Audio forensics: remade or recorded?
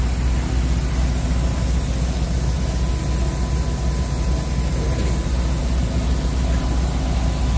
recorded